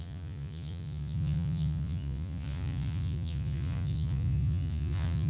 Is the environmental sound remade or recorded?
remade